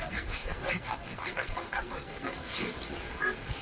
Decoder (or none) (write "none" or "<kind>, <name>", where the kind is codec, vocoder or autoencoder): codec, SNAC